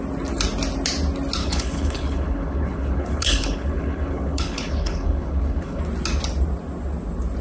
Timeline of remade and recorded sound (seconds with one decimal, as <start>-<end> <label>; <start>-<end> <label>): 0.0-1.4 recorded; 1.4-5.8 remade; 5.8-7.4 recorded